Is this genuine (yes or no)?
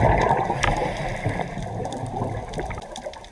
no